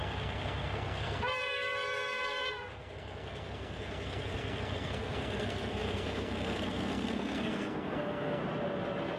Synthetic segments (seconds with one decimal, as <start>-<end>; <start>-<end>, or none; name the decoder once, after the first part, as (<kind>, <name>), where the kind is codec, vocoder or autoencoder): 0.0-8.4 (codec, SNAC)